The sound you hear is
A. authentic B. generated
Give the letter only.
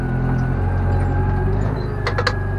A